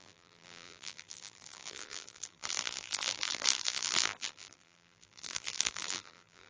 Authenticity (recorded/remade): remade